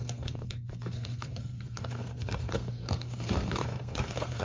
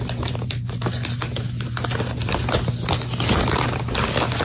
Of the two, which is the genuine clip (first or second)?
second